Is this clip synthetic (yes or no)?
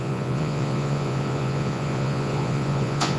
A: yes